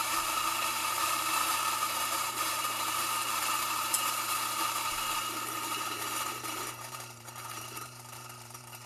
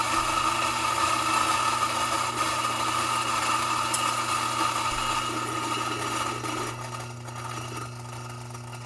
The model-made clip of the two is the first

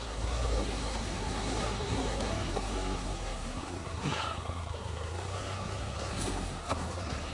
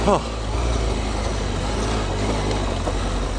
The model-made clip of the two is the first